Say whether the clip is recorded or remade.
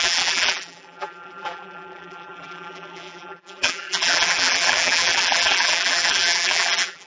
remade